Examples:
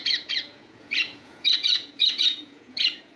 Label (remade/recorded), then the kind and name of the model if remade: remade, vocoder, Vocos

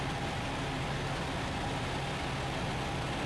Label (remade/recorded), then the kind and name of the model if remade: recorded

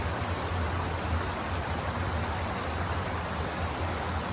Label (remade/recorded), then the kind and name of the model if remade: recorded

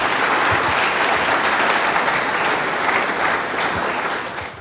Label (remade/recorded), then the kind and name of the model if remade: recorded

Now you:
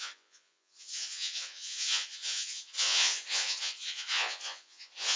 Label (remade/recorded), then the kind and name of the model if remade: remade, vocoder, Vocos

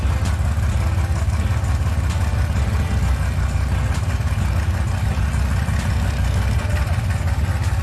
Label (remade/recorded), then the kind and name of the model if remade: recorded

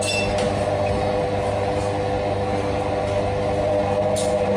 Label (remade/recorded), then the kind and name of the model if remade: recorded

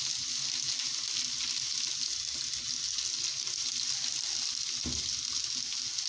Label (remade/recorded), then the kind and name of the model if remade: recorded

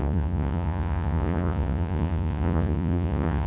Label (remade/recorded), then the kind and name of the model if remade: remade, vocoder, Vocos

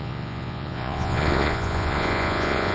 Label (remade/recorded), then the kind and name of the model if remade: remade, vocoder, Vocos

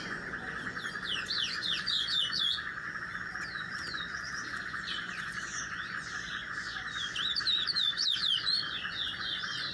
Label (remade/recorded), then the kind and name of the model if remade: remade, vocoder, Vocos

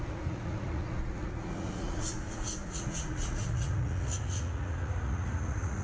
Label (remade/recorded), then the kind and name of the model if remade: remade, vocoder, Vocos